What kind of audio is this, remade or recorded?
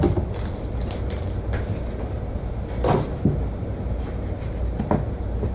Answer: recorded